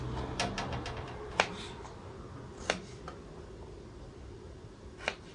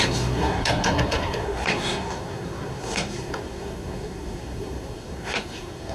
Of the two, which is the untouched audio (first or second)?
first